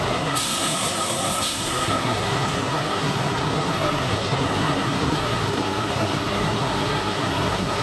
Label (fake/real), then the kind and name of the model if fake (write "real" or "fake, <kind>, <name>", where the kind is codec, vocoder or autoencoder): fake, codec, SNAC